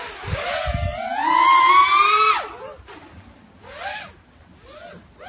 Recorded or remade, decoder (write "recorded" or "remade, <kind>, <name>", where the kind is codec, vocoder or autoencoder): recorded